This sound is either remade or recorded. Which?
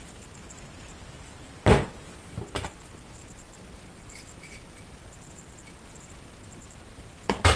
recorded